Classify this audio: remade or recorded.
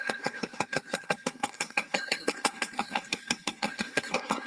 remade